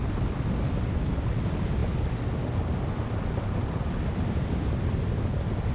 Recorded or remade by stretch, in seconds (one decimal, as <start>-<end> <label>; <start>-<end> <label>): 0.0-5.7 recorded